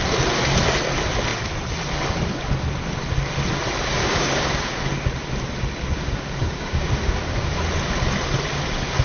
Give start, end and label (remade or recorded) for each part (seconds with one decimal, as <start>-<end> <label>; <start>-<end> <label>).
0.0-4.0 recorded; 4.0-4.8 remade; 4.8-5.8 recorded; 5.8-7.5 remade; 7.5-9.0 recorded